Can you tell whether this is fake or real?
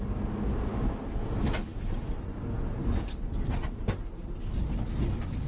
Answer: real